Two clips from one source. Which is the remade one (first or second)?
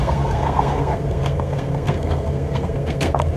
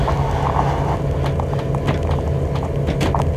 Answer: first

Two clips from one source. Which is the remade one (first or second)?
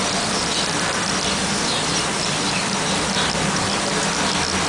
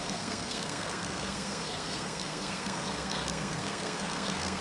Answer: second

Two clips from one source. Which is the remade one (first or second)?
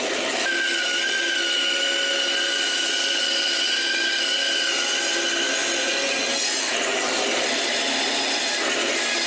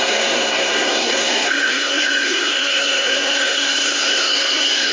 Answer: second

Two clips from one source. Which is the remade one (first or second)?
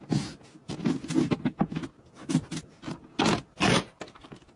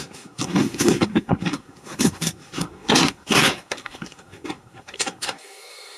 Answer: second